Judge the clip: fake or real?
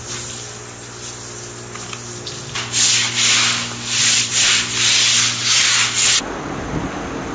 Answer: real